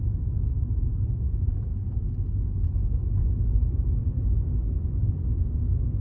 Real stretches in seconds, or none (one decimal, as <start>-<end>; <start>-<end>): 0.0-1.5; 2.1-6.0